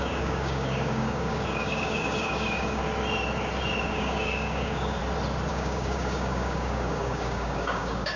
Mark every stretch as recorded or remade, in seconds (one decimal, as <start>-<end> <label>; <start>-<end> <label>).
0.0-2.8 remade; 2.8-3.8 recorded; 3.8-5.0 remade; 5.0-5.5 recorded; 5.5-8.2 remade

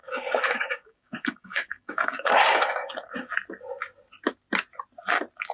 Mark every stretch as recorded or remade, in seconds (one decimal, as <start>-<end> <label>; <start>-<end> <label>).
0.0-3.3 remade; 3.3-5.5 recorded

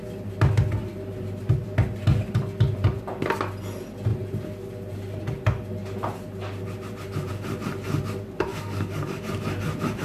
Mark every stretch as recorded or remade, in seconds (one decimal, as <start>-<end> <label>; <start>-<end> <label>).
0.0-8.5 recorded; 8.5-9.2 remade; 9.2-10.0 recorded

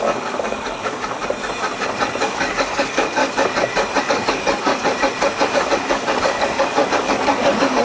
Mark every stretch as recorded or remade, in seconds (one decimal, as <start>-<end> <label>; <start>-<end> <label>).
0.0-1.2 remade; 1.2-2.2 recorded; 2.2-3.2 remade; 3.2-4.0 recorded; 4.0-4.7 remade; 4.7-5.5 recorded; 5.5-7.8 remade